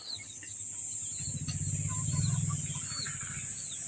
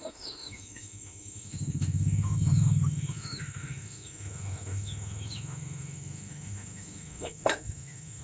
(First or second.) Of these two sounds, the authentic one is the first